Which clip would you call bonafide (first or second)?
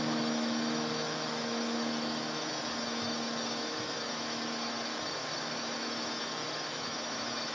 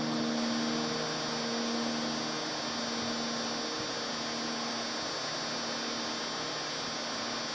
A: second